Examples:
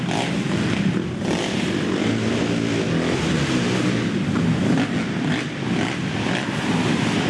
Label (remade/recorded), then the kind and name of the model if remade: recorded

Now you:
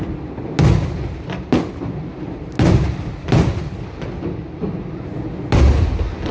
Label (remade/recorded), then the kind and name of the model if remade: recorded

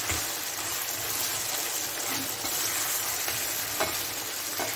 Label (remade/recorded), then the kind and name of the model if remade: recorded